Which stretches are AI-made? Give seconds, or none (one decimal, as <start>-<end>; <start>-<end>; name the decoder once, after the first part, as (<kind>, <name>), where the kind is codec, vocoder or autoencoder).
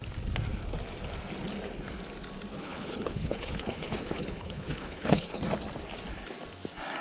2.5-5.4 (codec, HILCodec)